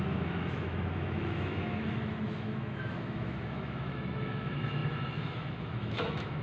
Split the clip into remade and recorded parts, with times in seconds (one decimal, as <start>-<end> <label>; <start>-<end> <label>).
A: 0.0-6.4 remade

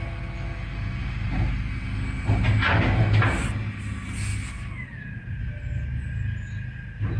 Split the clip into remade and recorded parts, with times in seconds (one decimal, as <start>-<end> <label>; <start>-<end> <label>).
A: 0.0-7.2 recorded

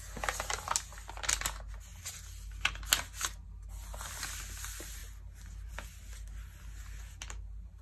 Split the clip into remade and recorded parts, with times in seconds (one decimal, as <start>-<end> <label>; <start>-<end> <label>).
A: 0.0-7.8 recorded

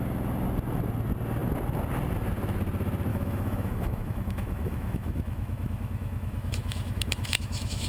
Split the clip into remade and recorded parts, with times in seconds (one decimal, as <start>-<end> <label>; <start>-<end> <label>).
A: 0.0-3.1 recorded; 3.1-7.9 remade

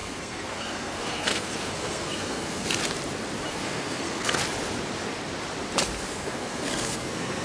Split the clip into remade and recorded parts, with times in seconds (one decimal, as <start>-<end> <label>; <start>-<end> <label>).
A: 0.0-2.8 remade; 2.8-3.5 recorded; 3.5-4.4 remade; 4.4-6.1 recorded; 6.1-7.4 remade

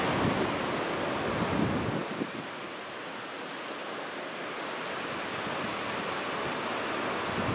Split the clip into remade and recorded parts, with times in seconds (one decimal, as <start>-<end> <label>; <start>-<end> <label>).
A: 0.0-7.5 recorded